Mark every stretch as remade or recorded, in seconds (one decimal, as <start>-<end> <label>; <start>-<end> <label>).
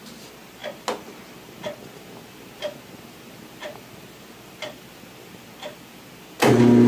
0.0-6.9 recorded